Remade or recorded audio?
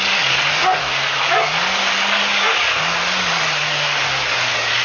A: remade